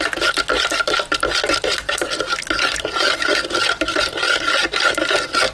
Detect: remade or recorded remade